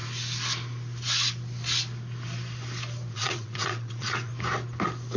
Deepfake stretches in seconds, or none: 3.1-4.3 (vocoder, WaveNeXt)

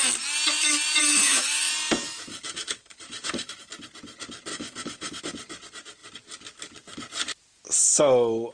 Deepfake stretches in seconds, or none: 1.1-1.7 (autoencoder, DAC-VAE); 2.3-3.7; 4.5-5.2

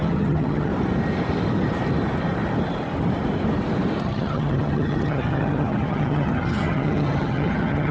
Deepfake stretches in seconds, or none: 0.0-0.7 (vocoder, HiFi-GAN); 4.0-7.9

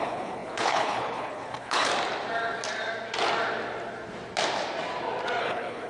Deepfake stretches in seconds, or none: 0.0-1.9 (codec, HILCodec); 5.4-5.9